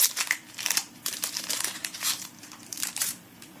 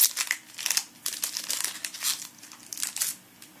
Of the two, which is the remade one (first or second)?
first